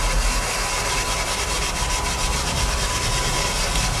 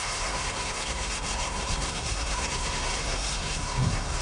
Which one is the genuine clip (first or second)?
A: first